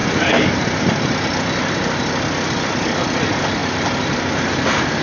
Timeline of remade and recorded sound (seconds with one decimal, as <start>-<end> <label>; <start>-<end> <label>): 0.0-1.1 remade; 1.1-3.6 recorded; 3.6-4.5 remade; 4.5-5.0 recorded